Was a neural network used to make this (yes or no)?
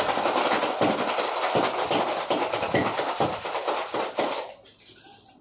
no